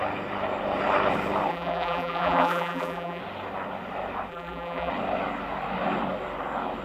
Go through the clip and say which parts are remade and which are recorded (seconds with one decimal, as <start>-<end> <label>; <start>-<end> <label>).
0.0-1.5 recorded; 1.5-3.2 remade; 3.2-4.3 recorded; 4.3-4.9 remade; 4.9-6.8 recorded